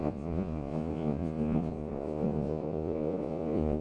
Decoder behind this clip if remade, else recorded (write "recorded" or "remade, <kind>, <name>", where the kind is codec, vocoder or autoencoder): remade, vocoder, Vocos